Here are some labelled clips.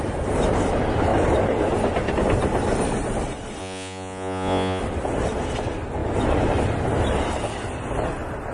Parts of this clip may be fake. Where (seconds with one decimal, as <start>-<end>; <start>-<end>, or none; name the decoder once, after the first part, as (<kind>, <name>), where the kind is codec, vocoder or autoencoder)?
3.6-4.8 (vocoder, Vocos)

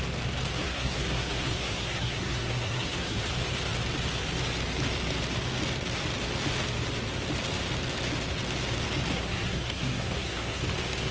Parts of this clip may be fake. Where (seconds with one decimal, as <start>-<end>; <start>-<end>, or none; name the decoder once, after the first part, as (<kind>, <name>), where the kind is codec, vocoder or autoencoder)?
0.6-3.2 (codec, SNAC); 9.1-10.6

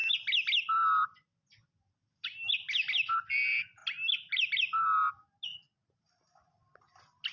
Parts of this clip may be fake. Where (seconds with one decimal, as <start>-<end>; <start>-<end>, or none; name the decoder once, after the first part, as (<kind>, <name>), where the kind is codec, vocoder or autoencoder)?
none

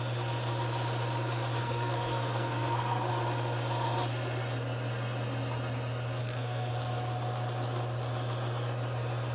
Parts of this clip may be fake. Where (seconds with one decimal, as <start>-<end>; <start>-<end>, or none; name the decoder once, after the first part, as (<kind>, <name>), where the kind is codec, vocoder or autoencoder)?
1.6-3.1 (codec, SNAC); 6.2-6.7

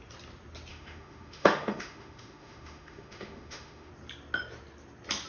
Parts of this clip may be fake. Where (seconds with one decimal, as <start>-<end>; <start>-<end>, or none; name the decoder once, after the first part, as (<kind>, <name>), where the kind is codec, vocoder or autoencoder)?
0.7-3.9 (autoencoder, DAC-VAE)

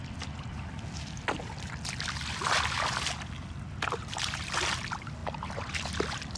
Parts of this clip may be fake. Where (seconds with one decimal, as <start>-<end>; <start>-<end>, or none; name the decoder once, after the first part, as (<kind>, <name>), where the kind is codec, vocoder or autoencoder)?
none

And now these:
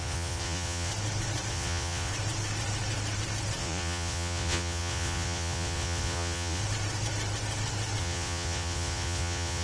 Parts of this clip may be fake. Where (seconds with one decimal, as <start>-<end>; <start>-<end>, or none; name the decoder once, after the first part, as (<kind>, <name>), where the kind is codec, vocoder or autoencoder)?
0.0-0.9 (vocoder, Vocos); 1.5-2.1; 3.6-6.6; 8.0-9.6

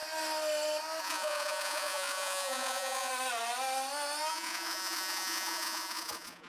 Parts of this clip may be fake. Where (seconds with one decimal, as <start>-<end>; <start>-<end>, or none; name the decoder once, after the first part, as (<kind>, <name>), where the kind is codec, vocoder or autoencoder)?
1.0-3.1 (vocoder, Vocos); 4.3-6.5